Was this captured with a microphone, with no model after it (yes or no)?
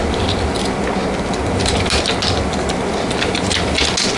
yes